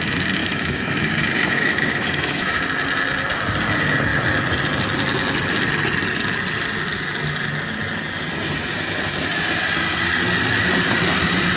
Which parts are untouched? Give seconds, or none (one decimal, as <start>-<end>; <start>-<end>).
0.0-0.4; 2.6-11.6